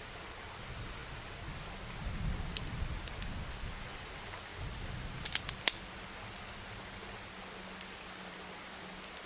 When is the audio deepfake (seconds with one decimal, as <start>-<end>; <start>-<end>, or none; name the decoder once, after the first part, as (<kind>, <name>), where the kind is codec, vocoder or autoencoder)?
none